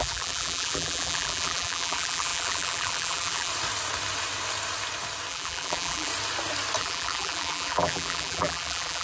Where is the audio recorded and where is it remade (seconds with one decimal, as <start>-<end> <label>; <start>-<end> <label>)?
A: 0.0-3.5 remade; 3.5-5.3 recorded; 5.3-6.1 remade; 6.1-6.8 recorded; 6.8-9.0 remade